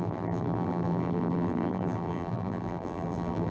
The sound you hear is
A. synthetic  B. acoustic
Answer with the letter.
A